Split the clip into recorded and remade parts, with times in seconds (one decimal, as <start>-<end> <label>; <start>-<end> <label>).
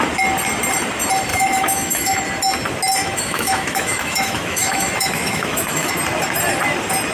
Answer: 0.0-1.3 recorded; 1.3-2.2 remade; 2.2-3.0 recorded; 3.0-5.9 remade; 5.9-7.1 recorded